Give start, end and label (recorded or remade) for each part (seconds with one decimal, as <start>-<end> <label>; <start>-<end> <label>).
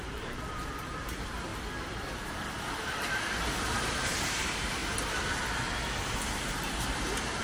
0.0-1.5 remade; 1.5-3.8 recorded; 3.8-4.8 remade; 4.8-6.1 recorded; 6.1-7.4 remade